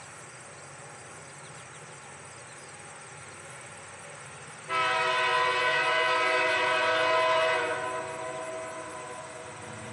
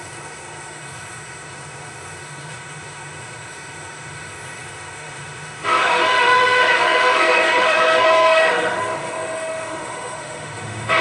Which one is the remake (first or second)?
second